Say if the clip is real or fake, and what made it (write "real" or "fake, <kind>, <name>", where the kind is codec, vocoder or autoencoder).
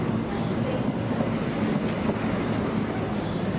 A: real